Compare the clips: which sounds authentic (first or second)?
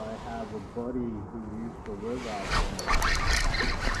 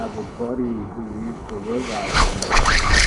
first